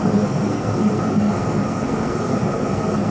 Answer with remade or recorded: remade